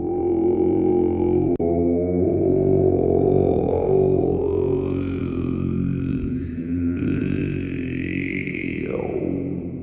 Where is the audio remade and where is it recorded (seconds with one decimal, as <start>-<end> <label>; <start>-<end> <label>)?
0.0-0.9 remade; 0.9-4.2 recorded; 4.2-5.2 remade; 5.2-6.1 recorded; 6.1-7.4 remade; 7.4-8.5 recorded; 8.5-9.8 remade